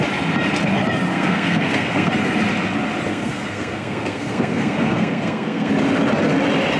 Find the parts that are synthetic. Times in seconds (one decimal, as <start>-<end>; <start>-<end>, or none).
1.1-2.1; 3.1-5.7